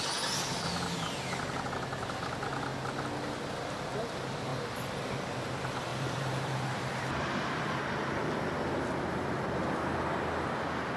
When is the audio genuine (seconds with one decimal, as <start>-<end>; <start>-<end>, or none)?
0.0-5.9; 7.8-11.0